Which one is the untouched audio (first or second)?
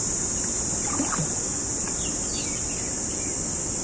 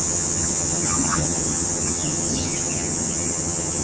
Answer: first